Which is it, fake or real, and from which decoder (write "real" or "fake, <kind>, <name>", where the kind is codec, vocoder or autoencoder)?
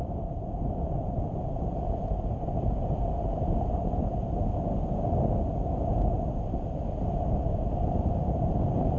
real